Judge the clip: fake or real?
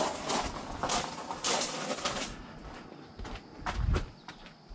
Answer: real